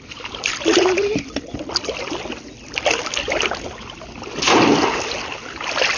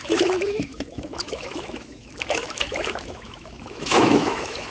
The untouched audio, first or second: first